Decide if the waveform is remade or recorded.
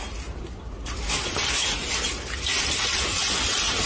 recorded